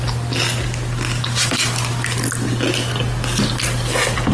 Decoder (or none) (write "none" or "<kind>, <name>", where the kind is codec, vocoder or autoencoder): none